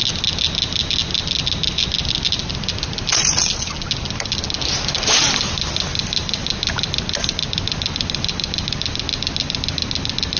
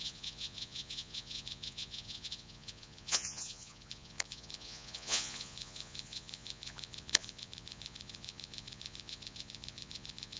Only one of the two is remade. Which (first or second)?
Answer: second